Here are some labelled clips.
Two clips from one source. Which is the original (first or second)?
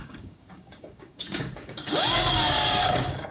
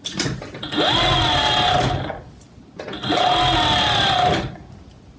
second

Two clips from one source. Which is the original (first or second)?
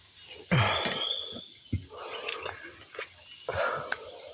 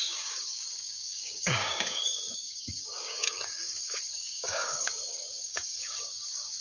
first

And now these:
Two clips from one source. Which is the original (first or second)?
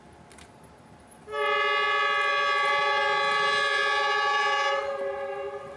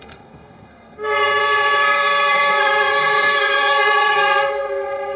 first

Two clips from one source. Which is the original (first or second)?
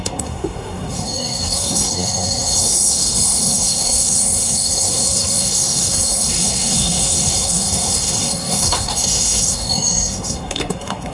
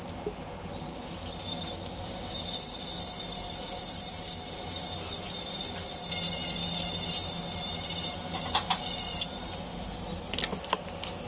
second